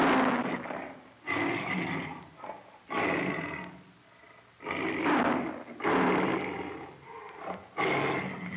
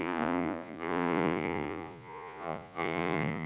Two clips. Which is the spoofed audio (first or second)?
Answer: second